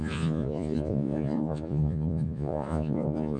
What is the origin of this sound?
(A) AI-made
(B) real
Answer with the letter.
A